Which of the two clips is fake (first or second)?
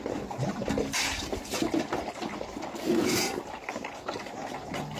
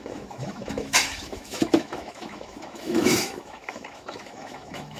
second